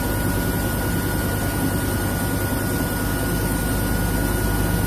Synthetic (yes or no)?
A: no